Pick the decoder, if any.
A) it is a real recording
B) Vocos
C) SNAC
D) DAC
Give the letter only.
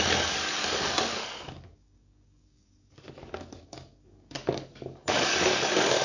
D